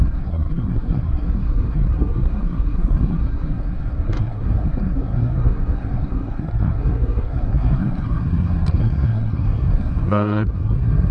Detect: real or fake fake